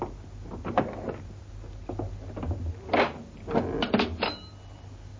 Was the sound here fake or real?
real